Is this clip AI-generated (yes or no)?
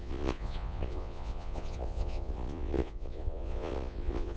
yes